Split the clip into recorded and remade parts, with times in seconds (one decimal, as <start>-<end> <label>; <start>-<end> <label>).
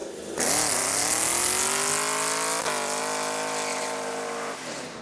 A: 0.0-3.7 recorded; 3.7-5.0 remade